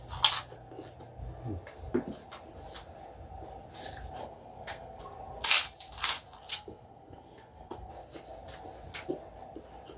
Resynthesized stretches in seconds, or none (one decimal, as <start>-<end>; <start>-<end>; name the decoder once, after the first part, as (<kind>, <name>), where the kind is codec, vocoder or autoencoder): 4.2-5.0 (codec, SNAC); 6.5-7.9